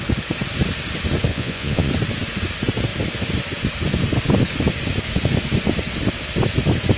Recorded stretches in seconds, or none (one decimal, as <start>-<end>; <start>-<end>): 0.0-1.3; 1.9-7.0